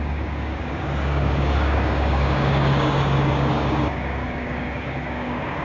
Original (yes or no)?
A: no